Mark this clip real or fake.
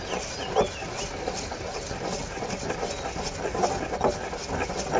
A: real